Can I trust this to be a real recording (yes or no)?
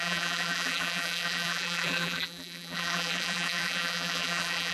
no